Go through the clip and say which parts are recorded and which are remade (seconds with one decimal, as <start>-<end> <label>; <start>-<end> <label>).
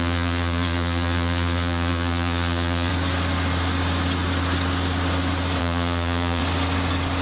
0.0-2.9 remade; 2.9-5.6 recorded; 5.6-6.4 remade; 6.4-7.2 recorded